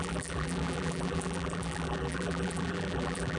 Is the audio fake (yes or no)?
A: yes